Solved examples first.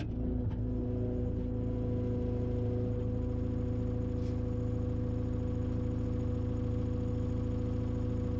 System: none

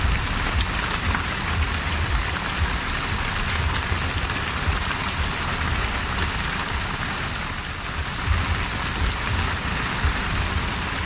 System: none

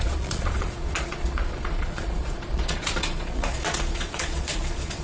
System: vocoder, Vocos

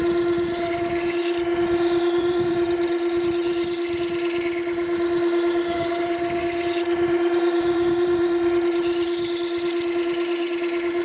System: vocoder, BigVGAN v2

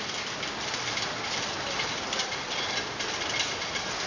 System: vocoder, BigVGAN v2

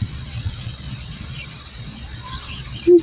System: vocoder, Vocos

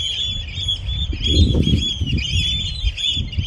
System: none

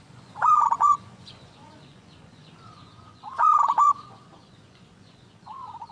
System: vocoder, Vocos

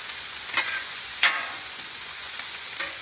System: vocoder, Vocos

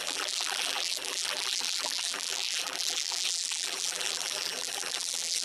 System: vocoder, BigVGAN v2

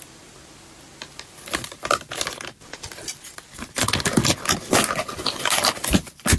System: none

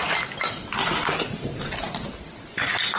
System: none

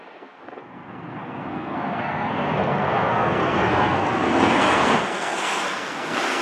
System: codec, SNAC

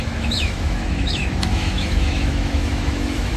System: autoencoder, DAC-VAE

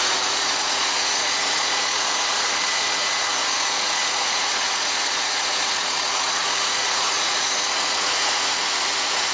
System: vocoder, Vocos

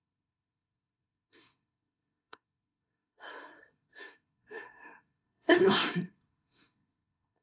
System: codec, SNAC